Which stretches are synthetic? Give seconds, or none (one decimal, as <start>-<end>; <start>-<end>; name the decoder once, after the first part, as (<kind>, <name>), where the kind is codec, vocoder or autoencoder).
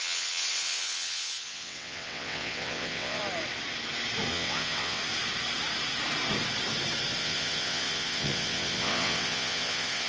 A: 0.0-3.2 (vocoder, WaveNeXt); 4.3-5.0; 7.2-10.1